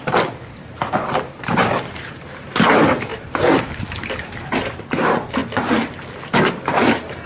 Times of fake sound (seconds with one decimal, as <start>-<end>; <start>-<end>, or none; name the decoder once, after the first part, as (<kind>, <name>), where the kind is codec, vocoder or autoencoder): 0.0-3.1 (vocoder, BigVGAN v2); 3.6-7.3